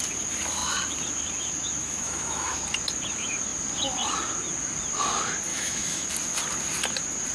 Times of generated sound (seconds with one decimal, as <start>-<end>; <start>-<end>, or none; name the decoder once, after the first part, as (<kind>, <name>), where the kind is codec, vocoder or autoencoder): 1.8-2.6 (autoencoder, DAC-VAE); 5.5-6.1